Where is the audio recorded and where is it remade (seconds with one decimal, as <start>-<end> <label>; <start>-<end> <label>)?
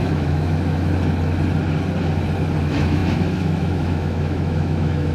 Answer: 0.0-0.9 remade; 0.9-2.6 recorded; 2.6-5.1 remade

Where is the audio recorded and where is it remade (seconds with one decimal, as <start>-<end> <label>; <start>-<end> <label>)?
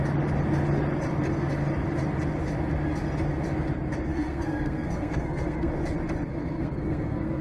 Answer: 0.0-4.1 recorded; 4.1-5.7 remade; 5.7-6.3 recorded; 6.3-7.4 remade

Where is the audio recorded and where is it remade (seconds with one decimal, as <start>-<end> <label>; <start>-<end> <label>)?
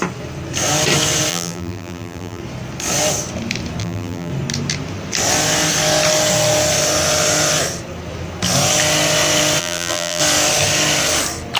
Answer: 0.0-1.3 recorded; 1.3-2.4 remade; 2.4-3.8 recorded; 3.8-4.3 remade; 4.3-9.6 recorded; 9.6-10.2 remade; 10.2-11.6 recorded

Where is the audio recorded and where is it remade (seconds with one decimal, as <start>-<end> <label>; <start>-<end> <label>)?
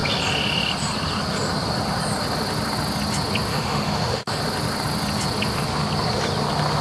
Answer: 0.0-3.5 recorded; 3.5-4.4 remade; 4.4-6.8 recorded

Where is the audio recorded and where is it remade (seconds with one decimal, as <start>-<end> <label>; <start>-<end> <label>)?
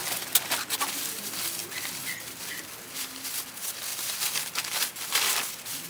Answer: 0.0-0.5 remade; 0.5-1.6 recorded; 1.6-2.8 remade; 2.8-3.9 recorded; 3.9-4.6 remade; 4.6-5.9 recorded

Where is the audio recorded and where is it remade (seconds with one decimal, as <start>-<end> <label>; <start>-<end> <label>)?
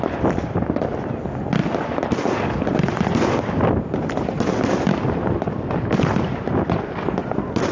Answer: 0.0-7.7 recorded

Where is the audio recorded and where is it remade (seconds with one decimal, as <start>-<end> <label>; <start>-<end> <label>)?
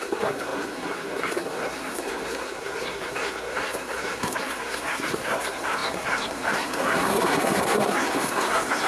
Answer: 0.0-8.9 remade